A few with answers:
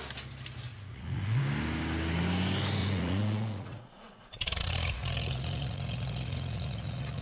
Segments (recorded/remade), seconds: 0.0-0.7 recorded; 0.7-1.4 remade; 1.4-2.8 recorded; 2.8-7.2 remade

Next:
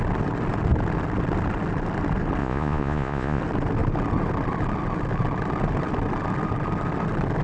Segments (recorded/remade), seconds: 0.0-2.4 recorded; 2.4-3.4 remade; 3.4-7.4 recorded

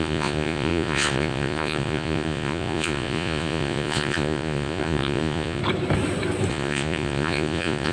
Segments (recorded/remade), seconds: 0.0-5.6 remade; 5.6-6.5 recorded; 6.5-7.9 remade